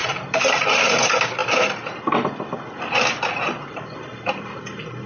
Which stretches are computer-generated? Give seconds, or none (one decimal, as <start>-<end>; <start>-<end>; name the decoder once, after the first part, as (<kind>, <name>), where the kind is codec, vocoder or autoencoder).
0.0-1.4 (vocoder, BigVGAN v2); 3.3-5.1